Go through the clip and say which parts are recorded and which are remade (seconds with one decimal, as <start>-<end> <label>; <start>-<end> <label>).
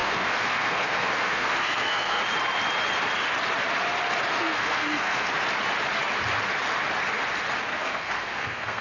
0.0-2.2 remade; 2.2-4.4 recorded; 4.4-5.3 remade; 5.3-7.7 recorded; 7.7-8.8 remade